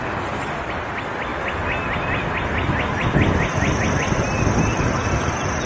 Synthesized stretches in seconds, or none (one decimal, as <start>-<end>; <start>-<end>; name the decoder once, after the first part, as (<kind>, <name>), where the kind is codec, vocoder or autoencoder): none